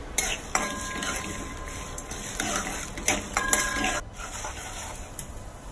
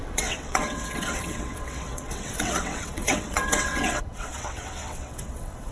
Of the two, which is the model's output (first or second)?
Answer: second